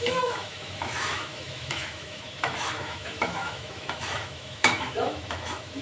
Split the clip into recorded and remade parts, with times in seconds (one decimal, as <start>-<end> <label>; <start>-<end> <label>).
0.0-5.8 remade